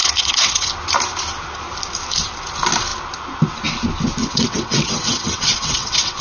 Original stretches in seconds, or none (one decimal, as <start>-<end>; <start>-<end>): 0.7-4.2

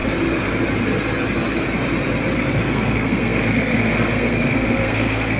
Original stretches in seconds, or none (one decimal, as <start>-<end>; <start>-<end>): 0.0-2.5

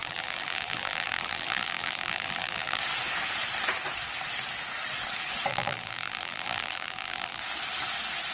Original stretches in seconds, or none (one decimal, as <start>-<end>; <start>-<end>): 2.8-5.5; 7.4-8.3

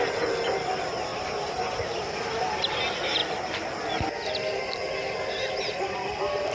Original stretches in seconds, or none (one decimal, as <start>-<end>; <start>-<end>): 0.0-1.1; 1.9-6.5

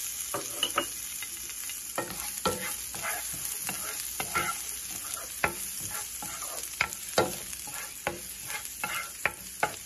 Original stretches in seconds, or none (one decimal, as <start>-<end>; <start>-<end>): 0.0-9.9

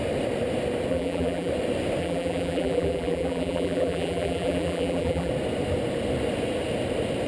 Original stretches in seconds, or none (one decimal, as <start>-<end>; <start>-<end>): 0.0-0.9; 1.5-2.0; 5.3-7.3

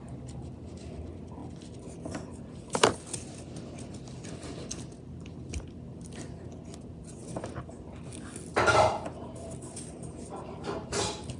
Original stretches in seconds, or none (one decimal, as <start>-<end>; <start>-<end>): 0.0-11.4

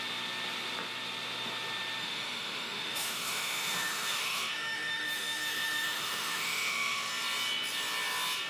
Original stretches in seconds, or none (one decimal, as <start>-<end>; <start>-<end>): 0.0-2.0; 7.1-8.5